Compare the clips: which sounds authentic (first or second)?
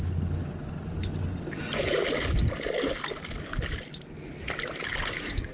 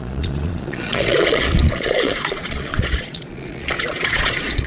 first